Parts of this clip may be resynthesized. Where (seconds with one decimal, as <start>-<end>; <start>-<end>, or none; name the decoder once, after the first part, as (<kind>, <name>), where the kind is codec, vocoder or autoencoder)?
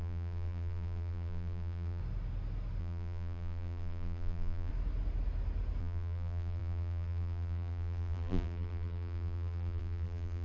0.0-2.0 (vocoder, BigVGAN v2); 2.8-4.7; 5.8-10.4